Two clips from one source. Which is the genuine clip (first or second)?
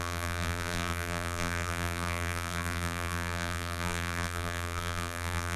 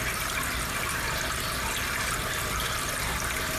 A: second